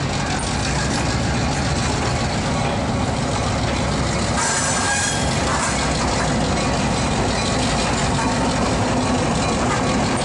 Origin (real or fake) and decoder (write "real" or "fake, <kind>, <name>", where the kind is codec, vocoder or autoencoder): real